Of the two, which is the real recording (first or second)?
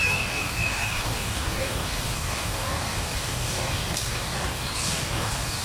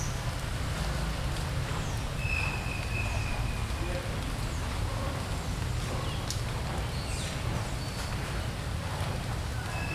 second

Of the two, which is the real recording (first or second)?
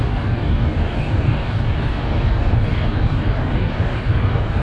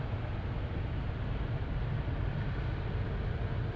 second